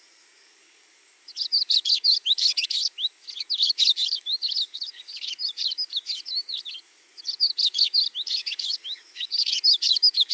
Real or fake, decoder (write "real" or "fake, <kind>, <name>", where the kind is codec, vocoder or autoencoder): fake, codec, DAC